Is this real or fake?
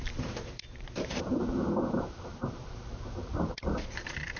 fake